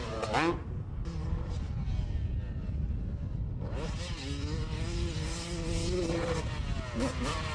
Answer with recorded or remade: recorded